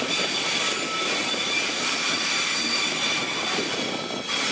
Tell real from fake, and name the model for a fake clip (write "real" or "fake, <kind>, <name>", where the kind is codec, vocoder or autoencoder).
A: real